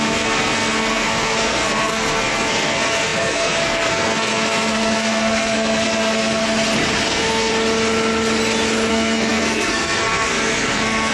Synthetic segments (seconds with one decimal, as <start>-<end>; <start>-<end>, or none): 0.0-6.4; 7.1-7.5; 8.9-11.1